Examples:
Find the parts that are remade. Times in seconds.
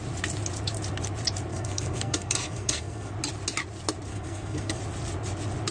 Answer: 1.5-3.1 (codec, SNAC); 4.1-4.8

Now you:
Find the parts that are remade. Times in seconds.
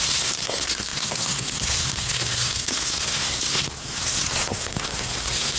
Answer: 0.0-5.6 (codec, SNAC)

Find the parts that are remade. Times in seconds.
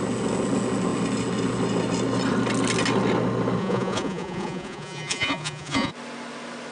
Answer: 3.6-5.9 (vocoder, Vocos)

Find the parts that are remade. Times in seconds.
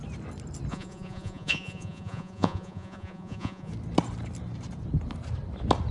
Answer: 0.7-3.7 (vocoder, Vocos)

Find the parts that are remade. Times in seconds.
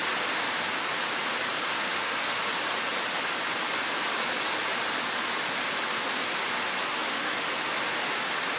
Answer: 1.8-2.4 (autoencoder, DAC-VAE); 6.9-7.7